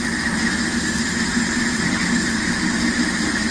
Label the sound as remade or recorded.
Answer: recorded